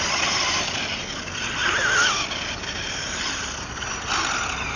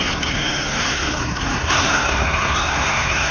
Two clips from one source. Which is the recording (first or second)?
first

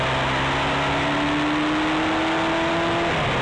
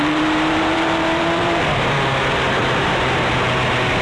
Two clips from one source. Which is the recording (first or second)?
first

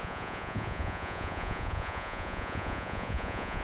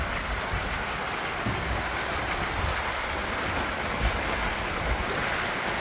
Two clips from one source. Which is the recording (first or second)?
second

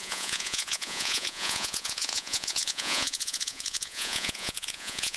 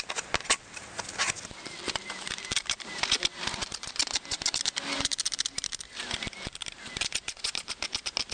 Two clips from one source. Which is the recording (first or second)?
second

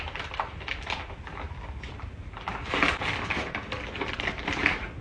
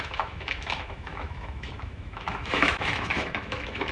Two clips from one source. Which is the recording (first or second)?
first